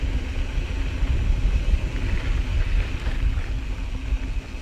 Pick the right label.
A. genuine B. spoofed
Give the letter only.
A